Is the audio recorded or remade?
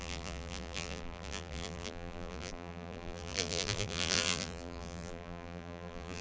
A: remade